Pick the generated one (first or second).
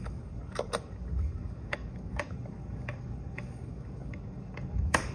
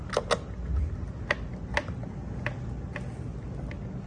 first